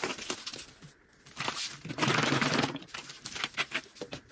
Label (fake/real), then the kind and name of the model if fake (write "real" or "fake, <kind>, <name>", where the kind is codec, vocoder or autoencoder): fake, vocoder, BigVGAN v2